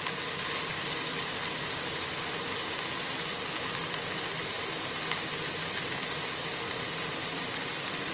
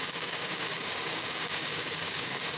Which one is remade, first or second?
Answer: second